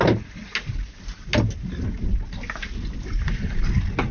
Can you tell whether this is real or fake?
real